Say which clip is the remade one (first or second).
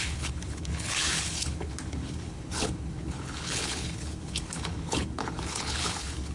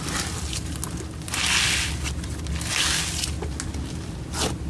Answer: first